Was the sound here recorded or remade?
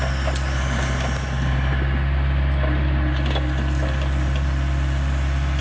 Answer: recorded